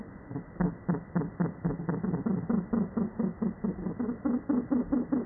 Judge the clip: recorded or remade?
recorded